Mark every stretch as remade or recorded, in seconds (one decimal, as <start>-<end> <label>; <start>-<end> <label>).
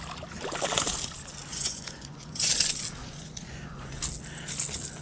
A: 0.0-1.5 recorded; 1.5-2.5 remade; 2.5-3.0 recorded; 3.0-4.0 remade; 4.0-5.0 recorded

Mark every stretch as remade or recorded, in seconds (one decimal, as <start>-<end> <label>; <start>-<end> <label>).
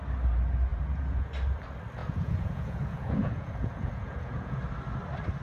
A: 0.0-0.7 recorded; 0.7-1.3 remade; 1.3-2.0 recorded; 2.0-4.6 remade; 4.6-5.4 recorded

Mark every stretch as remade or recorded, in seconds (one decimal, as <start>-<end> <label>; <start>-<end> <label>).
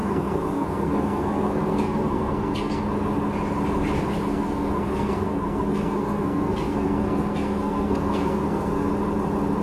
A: 0.0-2.8 remade; 2.8-4.3 recorded; 4.3-8.9 remade; 8.9-9.6 recorded